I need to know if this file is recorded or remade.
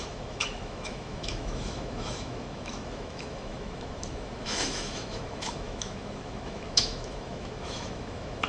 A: remade